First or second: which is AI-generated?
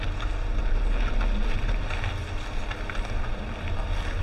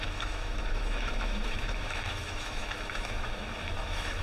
second